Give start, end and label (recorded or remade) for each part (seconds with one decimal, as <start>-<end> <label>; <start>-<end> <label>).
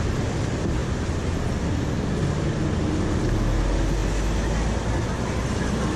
0.0-6.0 recorded